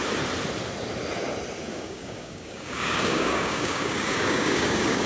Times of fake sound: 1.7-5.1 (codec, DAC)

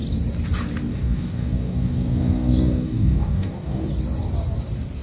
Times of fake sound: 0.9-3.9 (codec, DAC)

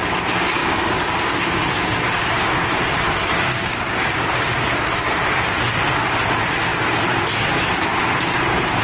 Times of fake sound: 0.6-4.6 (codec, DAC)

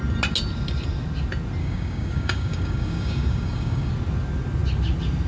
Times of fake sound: 1.6-3.9 (codec, DAC)